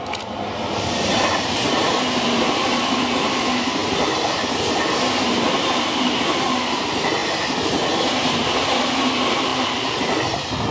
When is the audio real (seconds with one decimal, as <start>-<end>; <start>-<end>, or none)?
0.0-10.7